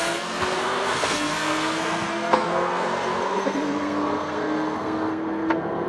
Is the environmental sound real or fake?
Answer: fake